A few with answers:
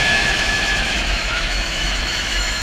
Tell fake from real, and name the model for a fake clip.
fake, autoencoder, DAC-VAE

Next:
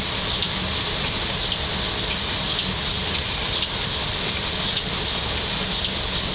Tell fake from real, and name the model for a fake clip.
real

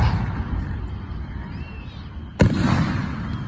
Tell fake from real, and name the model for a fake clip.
real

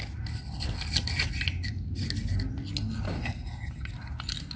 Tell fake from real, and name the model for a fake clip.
real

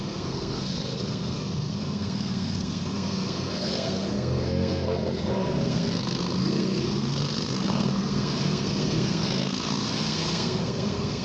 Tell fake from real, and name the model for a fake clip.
fake, codec, SNAC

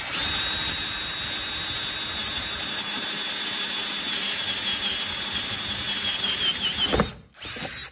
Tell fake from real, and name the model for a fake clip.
real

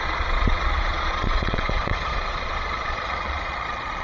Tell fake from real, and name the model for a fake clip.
fake, vocoder, Vocos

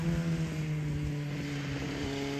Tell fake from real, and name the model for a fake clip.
real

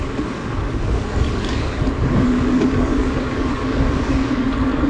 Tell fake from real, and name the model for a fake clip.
fake, codec, DAC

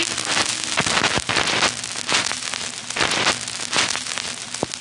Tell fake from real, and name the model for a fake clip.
real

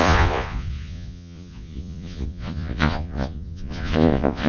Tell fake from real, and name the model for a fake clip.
fake, vocoder, Vocos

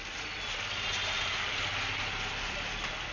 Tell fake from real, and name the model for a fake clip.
real